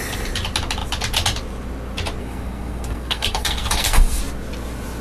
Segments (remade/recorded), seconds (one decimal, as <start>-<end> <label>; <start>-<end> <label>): 0.0-2.2 recorded; 2.2-4.2 remade; 4.2-5.0 recorded

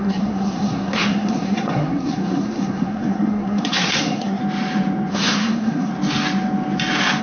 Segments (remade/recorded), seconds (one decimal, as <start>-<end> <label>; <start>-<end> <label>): 0.0-4.4 remade; 4.4-5.1 recorded; 5.1-5.9 remade; 5.9-7.2 recorded